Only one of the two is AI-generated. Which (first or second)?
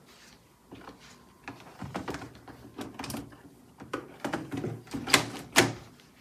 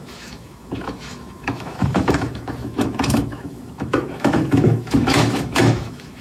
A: second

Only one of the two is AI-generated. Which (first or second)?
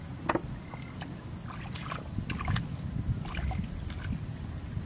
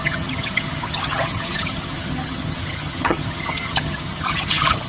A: second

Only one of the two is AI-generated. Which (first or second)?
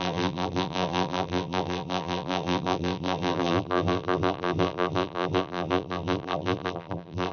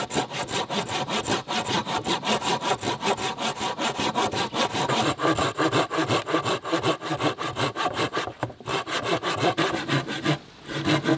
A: first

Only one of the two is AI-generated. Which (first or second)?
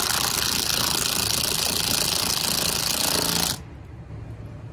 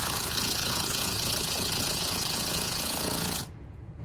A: second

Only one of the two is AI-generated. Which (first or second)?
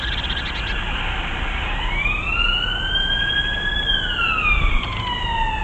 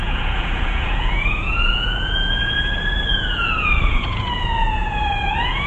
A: second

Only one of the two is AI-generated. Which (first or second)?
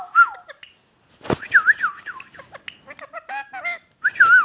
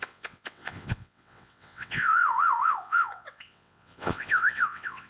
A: second